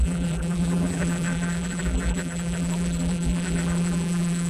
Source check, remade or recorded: remade